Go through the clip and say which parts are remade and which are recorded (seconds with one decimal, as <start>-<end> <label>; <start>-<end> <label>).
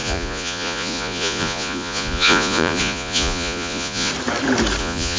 0.0-4.1 remade; 4.1-4.8 recorded; 4.8-5.2 remade